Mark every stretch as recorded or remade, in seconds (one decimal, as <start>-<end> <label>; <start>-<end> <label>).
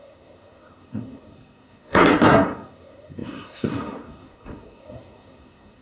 0.0-5.8 remade